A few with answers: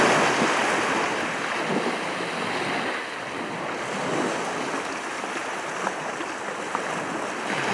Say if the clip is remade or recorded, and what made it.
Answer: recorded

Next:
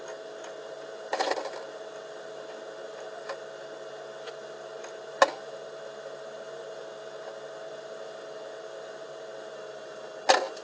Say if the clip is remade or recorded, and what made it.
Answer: recorded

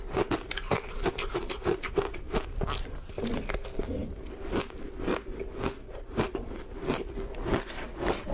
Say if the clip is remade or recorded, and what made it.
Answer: recorded